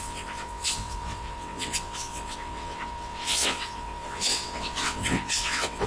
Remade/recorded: remade